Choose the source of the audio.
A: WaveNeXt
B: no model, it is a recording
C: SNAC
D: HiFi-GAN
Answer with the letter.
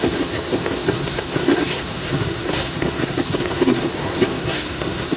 C